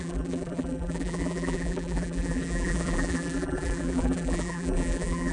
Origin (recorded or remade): remade